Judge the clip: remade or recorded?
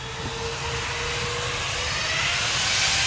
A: recorded